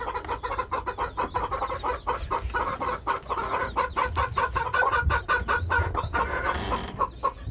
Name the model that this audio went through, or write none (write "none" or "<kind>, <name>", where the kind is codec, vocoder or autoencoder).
none